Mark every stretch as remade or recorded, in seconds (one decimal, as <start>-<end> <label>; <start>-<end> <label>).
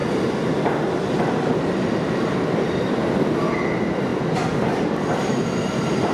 0.0-6.1 recorded